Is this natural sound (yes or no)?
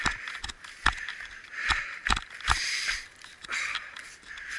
yes